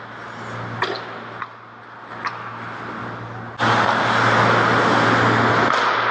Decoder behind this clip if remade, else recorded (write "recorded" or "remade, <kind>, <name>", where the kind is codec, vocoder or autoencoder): recorded